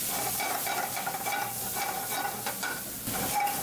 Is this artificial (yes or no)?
yes